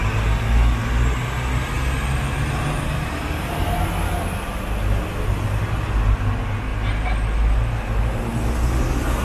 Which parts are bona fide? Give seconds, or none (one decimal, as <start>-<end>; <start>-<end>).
0.0-9.2